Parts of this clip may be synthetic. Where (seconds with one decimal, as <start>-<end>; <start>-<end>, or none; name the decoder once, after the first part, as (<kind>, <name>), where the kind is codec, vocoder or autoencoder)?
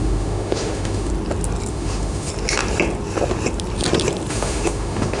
0.0-1.1 (autoencoder, DAC-VAE); 1.7-2.3; 4.3-5.2